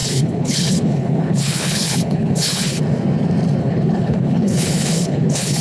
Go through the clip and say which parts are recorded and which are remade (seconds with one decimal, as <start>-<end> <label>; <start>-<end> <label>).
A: 0.0-2.8 remade; 2.8-3.6 recorded; 3.6-5.6 remade